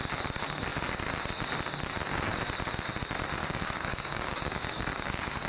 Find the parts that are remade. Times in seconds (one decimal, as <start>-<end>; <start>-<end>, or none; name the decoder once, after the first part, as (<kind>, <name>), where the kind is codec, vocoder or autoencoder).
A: 3.4-5.5 (codec, DAC)